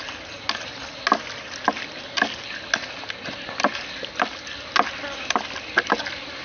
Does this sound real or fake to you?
real